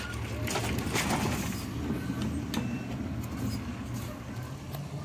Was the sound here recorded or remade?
recorded